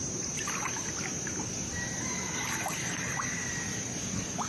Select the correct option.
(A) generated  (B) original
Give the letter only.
B